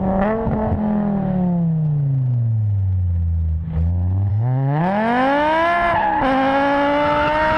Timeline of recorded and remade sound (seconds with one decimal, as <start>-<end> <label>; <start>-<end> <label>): 0.0-4.3 recorded; 4.3-4.8 remade; 4.8-7.6 recorded